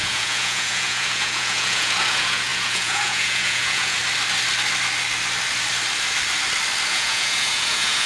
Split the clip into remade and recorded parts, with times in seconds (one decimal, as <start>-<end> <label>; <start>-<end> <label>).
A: 0.0-4.0 remade; 4.0-6.9 recorded; 6.9-8.1 remade